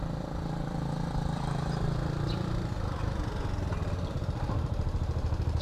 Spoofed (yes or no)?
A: yes